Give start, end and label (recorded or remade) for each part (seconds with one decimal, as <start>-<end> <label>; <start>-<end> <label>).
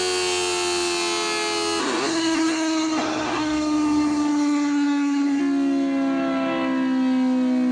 0.0-1.8 recorded; 1.8-5.4 remade; 5.4-7.7 recorded